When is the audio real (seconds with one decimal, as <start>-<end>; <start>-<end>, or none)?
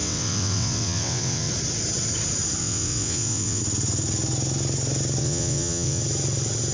1.5-2.6; 3.6-5.2; 6.0-6.7